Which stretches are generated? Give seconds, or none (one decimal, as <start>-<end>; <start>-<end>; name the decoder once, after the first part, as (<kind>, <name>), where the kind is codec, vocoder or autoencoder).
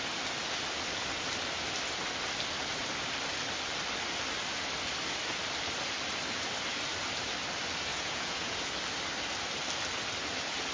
7.9-8.7 (vocoder, Vocos)